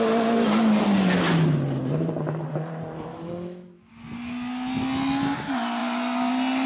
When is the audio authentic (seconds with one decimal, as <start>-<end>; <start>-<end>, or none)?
0.0-3.1; 3.9-6.7